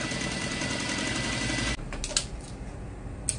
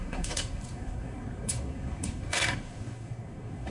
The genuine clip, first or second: first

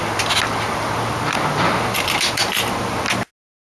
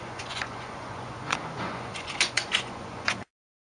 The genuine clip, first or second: first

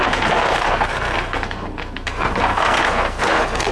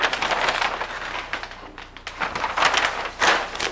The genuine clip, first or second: second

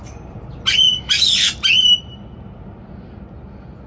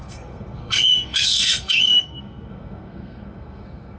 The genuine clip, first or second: first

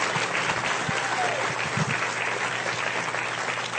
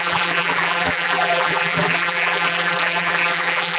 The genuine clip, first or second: first